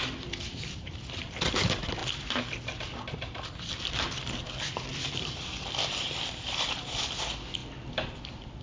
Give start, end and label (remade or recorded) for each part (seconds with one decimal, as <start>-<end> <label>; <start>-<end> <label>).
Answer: 0.0-7.6 remade; 7.6-8.2 recorded; 8.2-8.6 remade